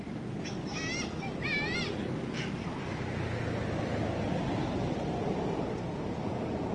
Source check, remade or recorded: recorded